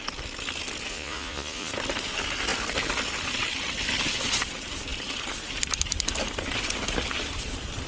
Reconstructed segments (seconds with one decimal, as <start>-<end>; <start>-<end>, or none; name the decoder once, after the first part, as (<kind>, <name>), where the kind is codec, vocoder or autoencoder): 0.9-1.7 (vocoder, Vocos)